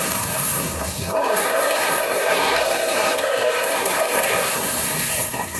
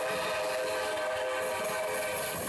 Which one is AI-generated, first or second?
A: first